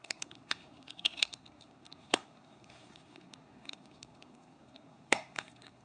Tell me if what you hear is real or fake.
fake